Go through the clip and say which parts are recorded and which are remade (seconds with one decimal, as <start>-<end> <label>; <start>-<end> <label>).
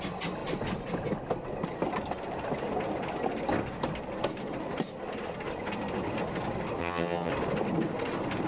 0.0-6.8 recorded; 6.8-7.3 remade; 7.3-8.5 recorded